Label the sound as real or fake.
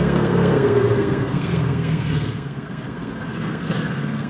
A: fake